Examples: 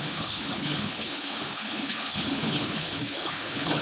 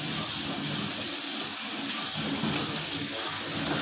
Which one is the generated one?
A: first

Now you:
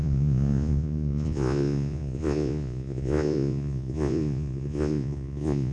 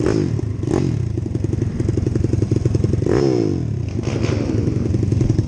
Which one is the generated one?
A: first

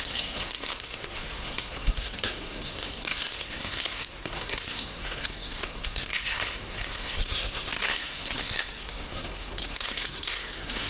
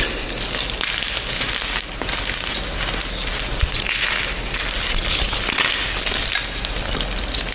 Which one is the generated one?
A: first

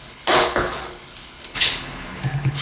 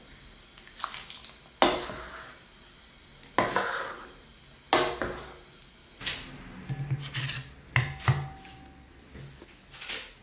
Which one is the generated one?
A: first